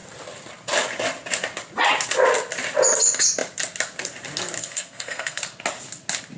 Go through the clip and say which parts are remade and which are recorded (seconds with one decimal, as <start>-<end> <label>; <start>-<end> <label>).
0.0-4.6 recorded; 4.6-5.4 remade; 5.4-6.4 recorded